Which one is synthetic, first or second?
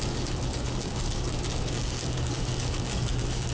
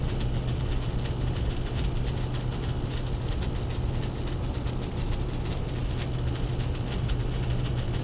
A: first